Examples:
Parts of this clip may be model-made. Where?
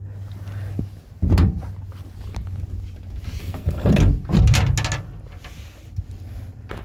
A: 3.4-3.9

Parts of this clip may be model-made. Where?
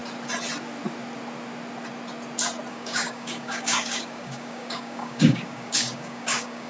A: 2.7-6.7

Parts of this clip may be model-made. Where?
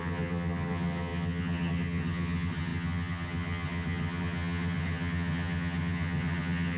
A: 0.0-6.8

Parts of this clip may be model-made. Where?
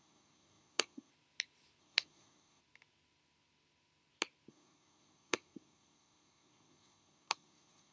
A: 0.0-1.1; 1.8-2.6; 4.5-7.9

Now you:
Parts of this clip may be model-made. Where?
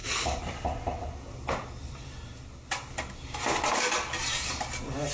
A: none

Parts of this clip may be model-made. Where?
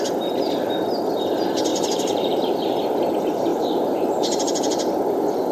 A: 1.7-2.8; 3.5-4.2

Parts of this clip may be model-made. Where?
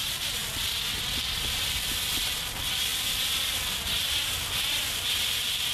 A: none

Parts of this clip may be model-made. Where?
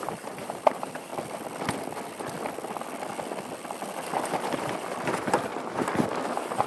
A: 0.0-1.1; 5.1-5.5; 6.3-6.7